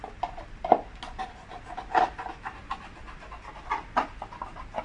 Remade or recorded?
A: recorded